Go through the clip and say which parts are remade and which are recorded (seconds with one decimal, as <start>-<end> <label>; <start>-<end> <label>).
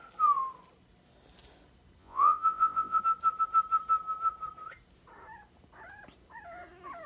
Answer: 0.0-2.0 recorded; 2.0-3.0 remade; 3.0-7.1 recorded